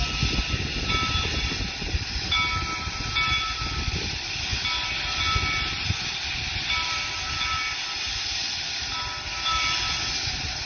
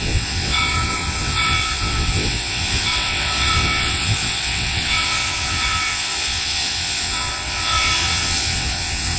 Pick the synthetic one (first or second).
second